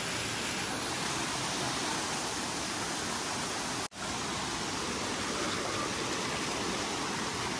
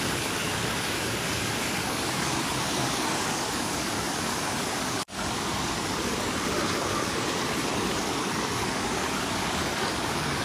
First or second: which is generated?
second